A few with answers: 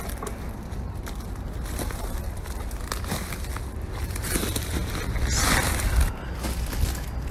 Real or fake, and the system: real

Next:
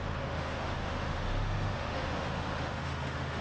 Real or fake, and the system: fake, autoencoder, DAC-VAE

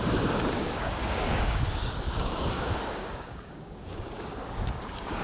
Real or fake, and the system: fake, codec, DAC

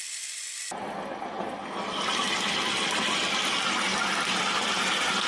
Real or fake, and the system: real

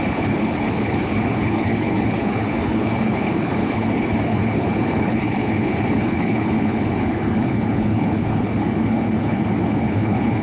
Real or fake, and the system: fake, codec, HILCodec